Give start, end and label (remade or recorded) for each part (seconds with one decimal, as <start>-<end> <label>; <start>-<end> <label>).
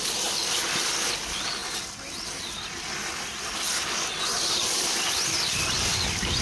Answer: 0.0-6.4 recorded